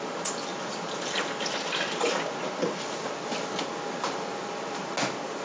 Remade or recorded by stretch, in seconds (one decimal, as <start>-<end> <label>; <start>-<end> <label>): 0.0-5.4 recorded